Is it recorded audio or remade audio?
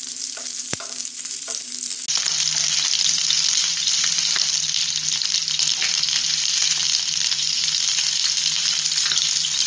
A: recorded